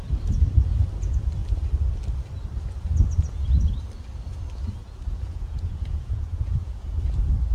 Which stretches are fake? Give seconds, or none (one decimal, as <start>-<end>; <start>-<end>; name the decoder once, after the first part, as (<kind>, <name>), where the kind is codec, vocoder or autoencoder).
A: 4.8-7.0 (vocoder, Vocos)